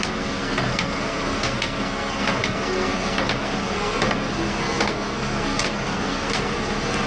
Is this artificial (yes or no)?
yes